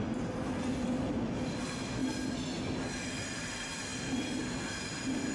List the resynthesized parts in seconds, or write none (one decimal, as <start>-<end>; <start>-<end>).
none